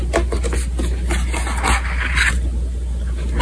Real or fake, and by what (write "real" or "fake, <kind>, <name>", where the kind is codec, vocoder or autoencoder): real